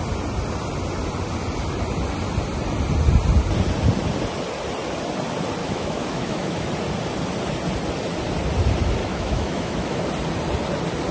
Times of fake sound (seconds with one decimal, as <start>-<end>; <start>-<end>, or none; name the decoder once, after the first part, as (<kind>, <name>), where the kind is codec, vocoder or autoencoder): 5.6-6.7 (autoencoder, DAC-VAE); 9.0-10.0

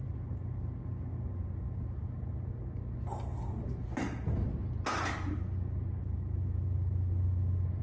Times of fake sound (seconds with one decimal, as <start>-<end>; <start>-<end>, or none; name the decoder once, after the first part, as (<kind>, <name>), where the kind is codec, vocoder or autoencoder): none

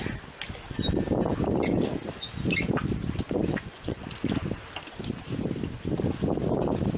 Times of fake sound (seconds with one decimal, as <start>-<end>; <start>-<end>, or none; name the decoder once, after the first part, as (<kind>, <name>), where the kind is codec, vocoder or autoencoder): 3.5-4.0 (vocoder, Vocos)

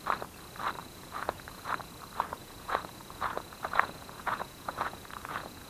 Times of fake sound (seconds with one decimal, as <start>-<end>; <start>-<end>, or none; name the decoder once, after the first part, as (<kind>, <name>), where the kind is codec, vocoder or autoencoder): 0.8-1.9 (vocoder, Vocos); 2.4-5.7

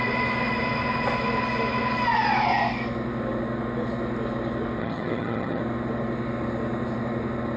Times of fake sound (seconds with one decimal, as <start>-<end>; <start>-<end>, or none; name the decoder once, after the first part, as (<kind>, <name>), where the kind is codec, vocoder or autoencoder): 4.8-5.6 (vocoder, HiFi-GAN)

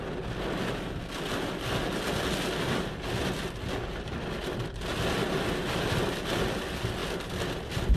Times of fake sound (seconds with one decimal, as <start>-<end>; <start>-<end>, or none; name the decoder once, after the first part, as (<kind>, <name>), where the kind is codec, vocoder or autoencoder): none

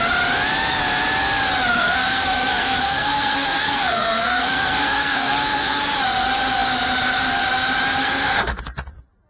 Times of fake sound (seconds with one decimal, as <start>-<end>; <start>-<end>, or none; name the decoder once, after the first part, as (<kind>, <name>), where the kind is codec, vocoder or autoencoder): 1.7-5.8 (codec, SNAC); 8.0-8.6

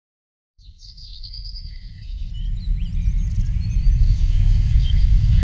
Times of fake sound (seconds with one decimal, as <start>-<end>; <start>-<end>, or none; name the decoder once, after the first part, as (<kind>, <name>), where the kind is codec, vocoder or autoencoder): 0.0-2.3 (codec, SNAC); 4.0-5.4